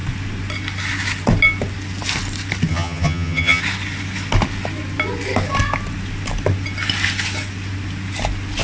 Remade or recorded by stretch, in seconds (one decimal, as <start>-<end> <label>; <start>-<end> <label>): 0.0-2.7 recorded; 2.7-3.6 remade; 3.6-8.6 recorded